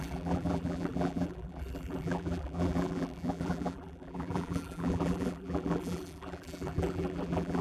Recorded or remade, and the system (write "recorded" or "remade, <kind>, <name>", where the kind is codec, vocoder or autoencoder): remade, vocoder, BigVGAN v2